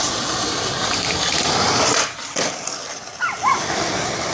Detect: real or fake real